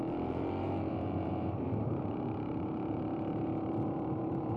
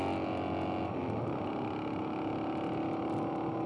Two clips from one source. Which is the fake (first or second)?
first